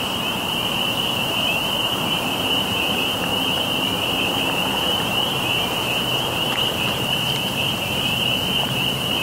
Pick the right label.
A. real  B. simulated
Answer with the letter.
B